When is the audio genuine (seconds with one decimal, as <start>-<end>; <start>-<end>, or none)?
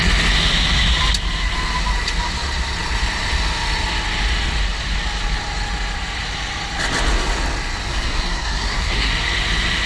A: 0.0-7.9; 9.1-9.9